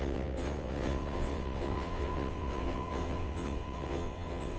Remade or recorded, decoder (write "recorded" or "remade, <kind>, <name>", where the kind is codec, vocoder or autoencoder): remade, vocoder, WaveNeXt